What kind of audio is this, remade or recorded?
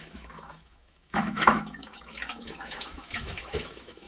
remade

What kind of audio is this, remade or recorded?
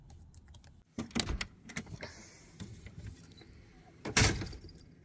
recorded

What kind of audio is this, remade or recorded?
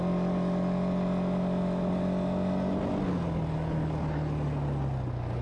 recorded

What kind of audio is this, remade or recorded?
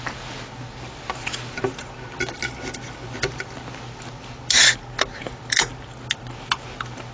recorded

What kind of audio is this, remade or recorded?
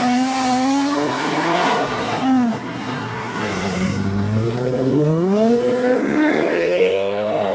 remade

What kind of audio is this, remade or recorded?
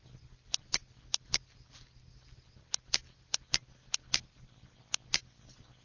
recorded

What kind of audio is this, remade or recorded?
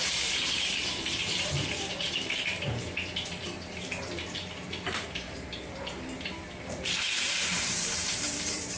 remade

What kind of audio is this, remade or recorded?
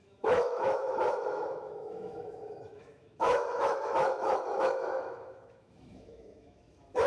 remade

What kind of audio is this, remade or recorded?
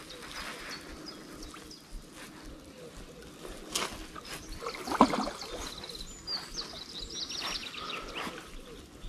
recorded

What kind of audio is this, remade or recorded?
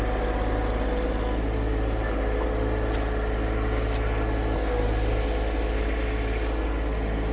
recorded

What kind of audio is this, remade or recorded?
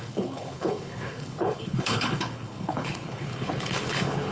remade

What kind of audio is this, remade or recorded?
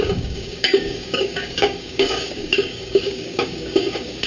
remade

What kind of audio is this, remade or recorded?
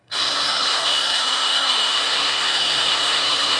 remade